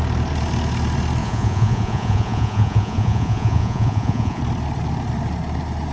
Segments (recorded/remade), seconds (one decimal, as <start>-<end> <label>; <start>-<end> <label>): 0.0-1.2 recorded; 1.2-4.4 remade; 4.4-5.9 recorded